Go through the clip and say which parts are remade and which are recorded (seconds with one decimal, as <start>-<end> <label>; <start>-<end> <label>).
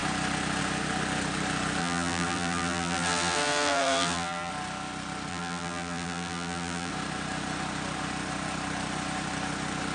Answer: 0.0-1.8 recorded; 1.8-4.5 remade; 4.5-5.3 recorded; 5.3-6.9 remade; 6.9-9.9 recorded